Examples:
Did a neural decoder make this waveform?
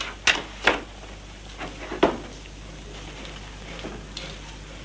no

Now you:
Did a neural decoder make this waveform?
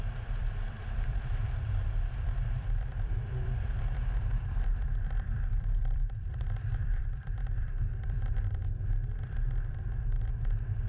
yes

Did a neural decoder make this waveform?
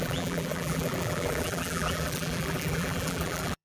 yes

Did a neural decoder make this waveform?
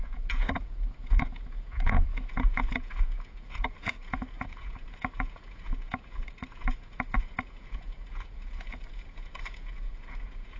yes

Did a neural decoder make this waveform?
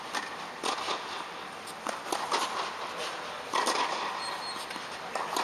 no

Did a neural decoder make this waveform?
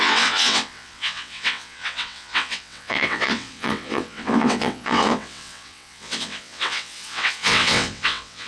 yes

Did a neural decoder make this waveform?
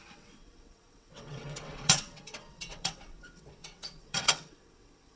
yes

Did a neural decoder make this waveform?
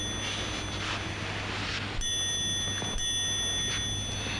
no